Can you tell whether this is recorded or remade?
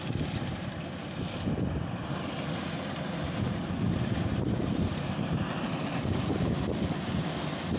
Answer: recorded